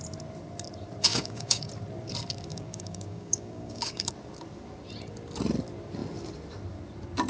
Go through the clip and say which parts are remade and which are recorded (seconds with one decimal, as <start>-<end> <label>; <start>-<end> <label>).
0.0-1.1 recorded; 1.1-1.7 remade; 1.7-2.5 recorded; 2.5-4.1 remade; 4.1-7.3 recorded